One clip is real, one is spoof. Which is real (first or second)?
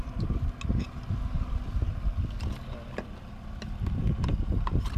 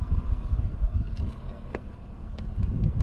first